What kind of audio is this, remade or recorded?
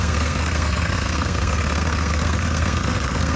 remade